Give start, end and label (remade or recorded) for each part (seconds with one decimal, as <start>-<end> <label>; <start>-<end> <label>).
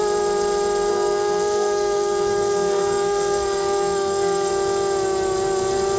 0.0-0.9 recorded; 0.9-4.5 remade; 4.5-6.0 recorded